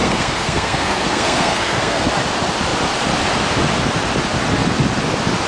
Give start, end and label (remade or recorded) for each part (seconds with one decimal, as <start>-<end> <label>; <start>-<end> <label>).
0.0-2.1 remade; 2.1-5.5 recorded